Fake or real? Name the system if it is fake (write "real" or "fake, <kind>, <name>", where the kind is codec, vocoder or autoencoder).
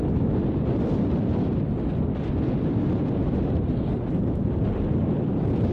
real